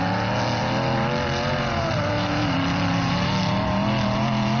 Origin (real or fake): real